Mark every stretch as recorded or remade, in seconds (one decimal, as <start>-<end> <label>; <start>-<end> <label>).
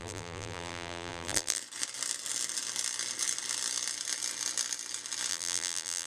0.0-1.6 remade; 1.6-5.3 recorded; 5.3-6.1 remade